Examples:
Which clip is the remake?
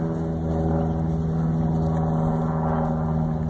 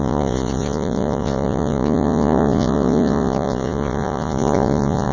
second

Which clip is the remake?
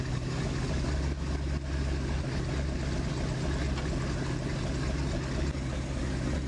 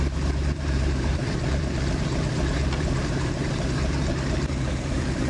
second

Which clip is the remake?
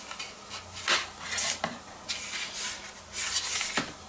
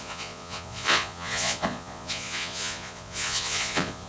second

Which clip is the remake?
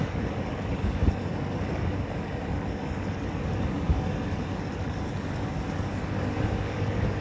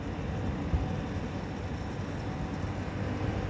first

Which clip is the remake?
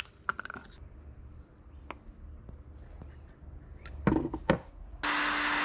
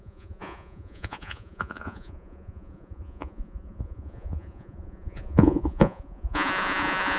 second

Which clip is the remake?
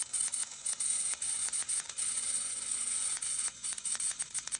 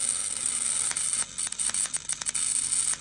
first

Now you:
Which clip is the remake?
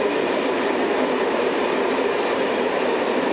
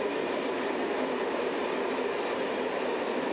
first